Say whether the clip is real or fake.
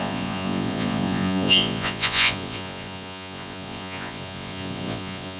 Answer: fake